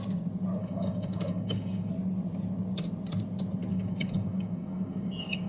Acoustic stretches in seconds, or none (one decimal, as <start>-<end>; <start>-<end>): 0.0-0.6; 1.9-3.7